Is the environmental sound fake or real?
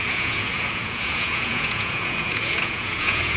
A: fake